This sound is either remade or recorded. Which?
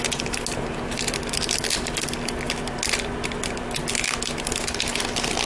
recorded